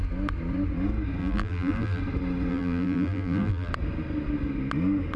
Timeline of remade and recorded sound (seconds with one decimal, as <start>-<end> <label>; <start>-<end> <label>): 0.0-1.2 recorded; 1.2-2.0 remade; 2.0-2.5 recorded; 2.5-3.7 remade; 3.7-5.2 recorded